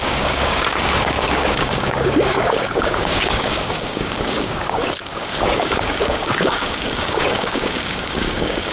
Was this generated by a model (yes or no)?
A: yes